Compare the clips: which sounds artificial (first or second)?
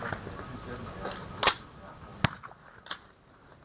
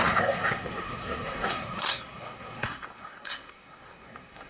second